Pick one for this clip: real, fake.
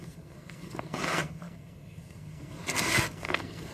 fake